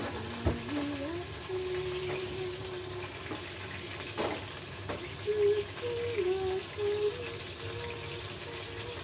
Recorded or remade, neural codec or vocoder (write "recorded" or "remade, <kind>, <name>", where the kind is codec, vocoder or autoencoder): recorded